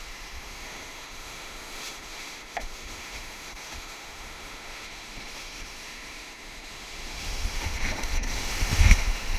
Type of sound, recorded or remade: remade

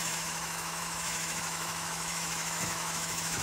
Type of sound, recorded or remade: remade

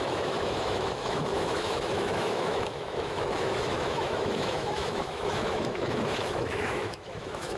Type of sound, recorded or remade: remade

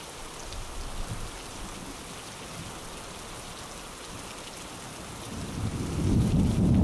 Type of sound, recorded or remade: recorded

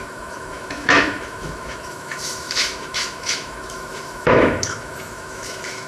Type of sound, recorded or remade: remade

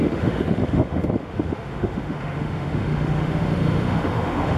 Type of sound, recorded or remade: remade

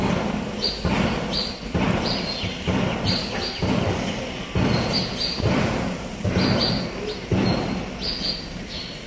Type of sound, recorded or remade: recorded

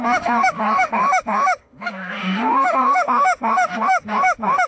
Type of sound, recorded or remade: remade